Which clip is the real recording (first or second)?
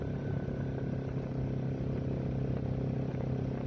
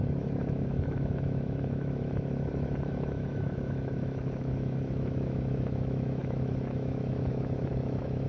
first